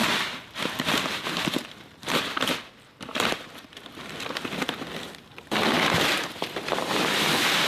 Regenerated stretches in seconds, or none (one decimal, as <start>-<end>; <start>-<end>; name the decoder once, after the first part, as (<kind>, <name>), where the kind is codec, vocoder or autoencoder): 0.0-2.7 (vocoder, BigVGAN v2)